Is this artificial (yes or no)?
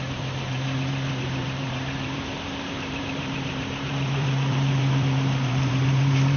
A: yes